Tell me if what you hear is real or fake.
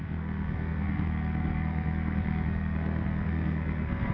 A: fake